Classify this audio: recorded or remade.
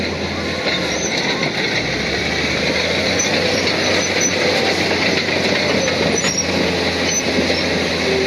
recorded